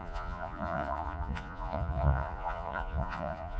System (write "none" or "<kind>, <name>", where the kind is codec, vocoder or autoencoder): vocoder, Vocos